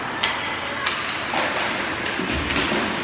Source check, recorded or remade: recorded